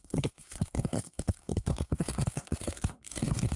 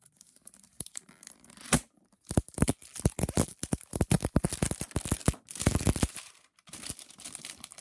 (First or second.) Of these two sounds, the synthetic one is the first